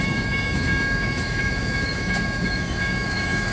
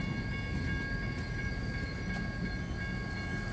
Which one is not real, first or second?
first